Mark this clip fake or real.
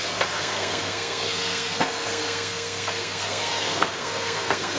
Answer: fake